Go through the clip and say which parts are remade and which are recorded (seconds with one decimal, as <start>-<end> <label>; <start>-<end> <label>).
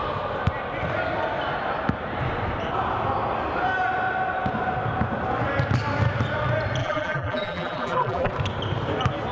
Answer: 0.0-6.8 recorded; 6.8-8.3 remade; 8.3-9.3 recorded